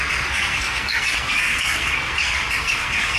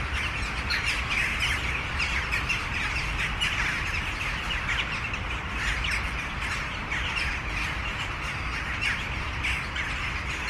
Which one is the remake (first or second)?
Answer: first